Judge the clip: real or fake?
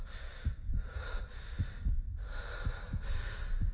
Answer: real